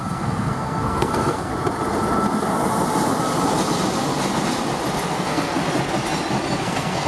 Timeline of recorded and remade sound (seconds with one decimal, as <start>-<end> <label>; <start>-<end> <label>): 0.0-1.5 remade; 1.5-5.1 recorded; 5.1-5.6 remade; 5.6-6.6 recorded; 6.6-7.1 remade